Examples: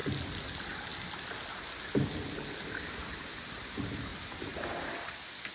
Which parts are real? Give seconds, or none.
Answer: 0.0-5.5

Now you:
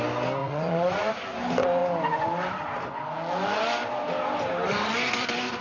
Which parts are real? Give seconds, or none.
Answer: 0.0-0.4; 1.1-5.6

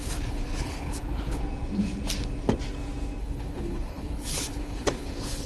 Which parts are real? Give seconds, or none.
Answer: 1.4-3.2

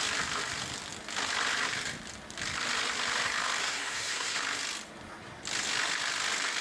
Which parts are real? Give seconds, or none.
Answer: 0.0-3.6; 4.4-6.6